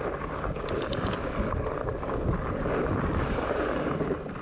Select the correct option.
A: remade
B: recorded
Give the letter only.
B